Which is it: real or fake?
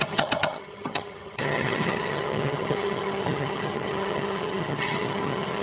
fake